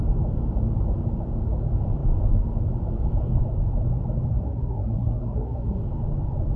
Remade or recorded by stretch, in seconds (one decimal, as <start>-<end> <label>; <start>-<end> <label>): 0.0-4.3 recorded; 4.3-5.8 remade; 5.8-6.6 recorded